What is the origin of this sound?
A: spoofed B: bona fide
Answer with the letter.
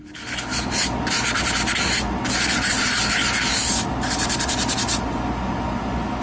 B